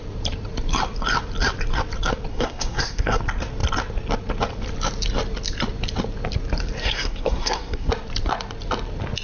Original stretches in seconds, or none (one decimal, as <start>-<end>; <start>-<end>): 0.0-2.3; 3.2-6.8; 7.9-9.2